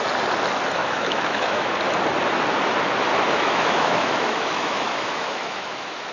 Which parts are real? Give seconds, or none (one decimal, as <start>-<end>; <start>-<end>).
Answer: 0.0-0.8; 1.7-3.1